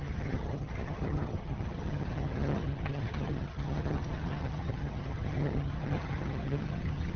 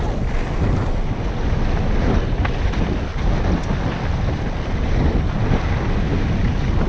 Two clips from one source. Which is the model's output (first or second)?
first